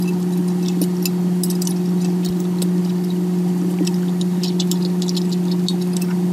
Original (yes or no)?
yes